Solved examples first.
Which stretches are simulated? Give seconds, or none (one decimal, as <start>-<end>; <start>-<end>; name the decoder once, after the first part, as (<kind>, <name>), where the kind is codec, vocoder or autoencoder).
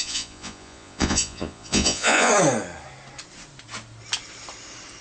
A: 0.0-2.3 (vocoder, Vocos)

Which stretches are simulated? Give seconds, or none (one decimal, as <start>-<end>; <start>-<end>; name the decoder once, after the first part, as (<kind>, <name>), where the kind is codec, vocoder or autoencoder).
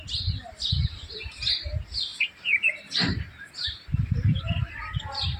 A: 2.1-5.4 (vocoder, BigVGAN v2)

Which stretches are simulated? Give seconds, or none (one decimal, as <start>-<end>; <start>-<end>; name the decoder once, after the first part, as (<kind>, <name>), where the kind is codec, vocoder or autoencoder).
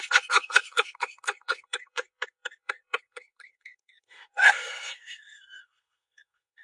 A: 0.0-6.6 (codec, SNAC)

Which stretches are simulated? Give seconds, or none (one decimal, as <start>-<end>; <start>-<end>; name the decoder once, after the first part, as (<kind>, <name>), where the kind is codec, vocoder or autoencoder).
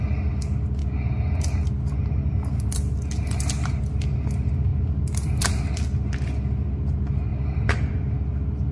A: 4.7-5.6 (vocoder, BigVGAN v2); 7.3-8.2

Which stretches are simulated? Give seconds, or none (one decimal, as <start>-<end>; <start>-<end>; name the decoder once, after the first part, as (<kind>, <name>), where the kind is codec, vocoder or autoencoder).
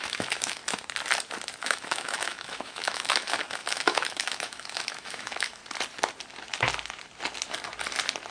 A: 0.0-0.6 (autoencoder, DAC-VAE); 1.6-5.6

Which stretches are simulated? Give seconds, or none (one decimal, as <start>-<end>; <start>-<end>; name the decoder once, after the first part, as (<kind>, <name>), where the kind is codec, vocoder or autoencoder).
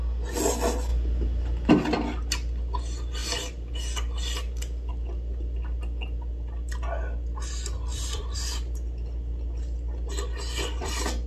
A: 7.9-11.3 (vocoder, BigVGAN v2)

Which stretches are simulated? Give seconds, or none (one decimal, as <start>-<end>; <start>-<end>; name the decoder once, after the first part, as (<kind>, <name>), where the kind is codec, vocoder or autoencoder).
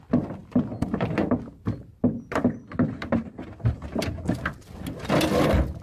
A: none